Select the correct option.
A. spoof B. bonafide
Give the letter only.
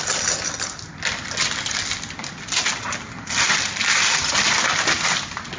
B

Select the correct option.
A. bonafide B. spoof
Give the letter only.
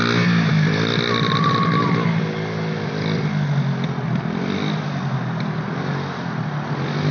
A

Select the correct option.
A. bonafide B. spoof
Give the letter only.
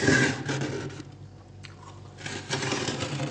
A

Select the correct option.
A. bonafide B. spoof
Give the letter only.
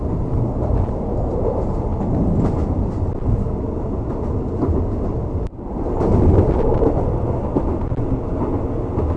A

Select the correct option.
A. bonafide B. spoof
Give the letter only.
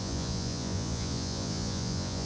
B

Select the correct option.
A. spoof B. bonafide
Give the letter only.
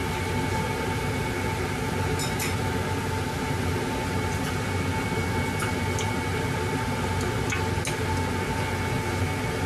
B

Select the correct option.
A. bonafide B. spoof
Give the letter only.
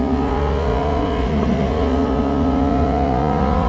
B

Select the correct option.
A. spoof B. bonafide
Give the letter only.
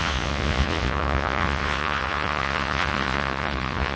A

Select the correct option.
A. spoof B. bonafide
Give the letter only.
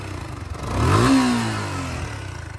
B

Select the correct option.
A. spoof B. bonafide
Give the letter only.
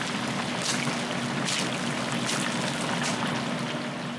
B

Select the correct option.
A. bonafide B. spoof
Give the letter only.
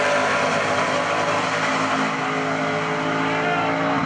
A